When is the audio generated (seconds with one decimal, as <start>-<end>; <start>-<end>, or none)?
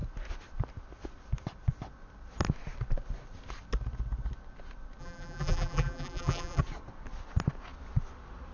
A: 5.0-6.6